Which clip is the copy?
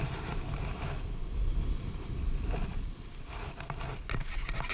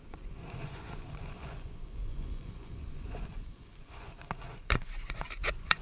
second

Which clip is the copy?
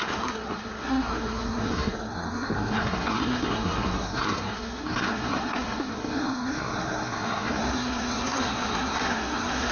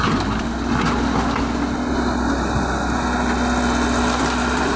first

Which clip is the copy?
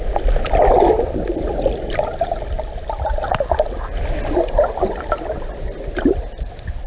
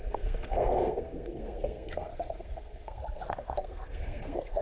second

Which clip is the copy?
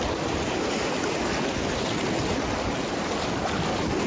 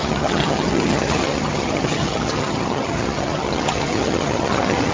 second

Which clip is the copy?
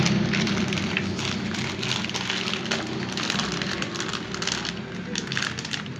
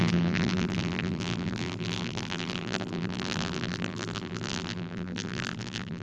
second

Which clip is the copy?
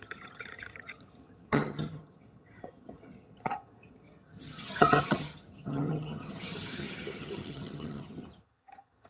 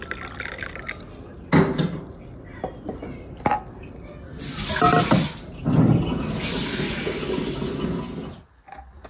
first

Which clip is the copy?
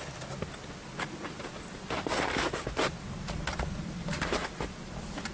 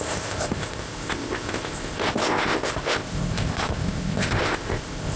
second